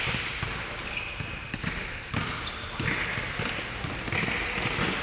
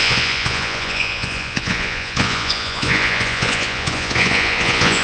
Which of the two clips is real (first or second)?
first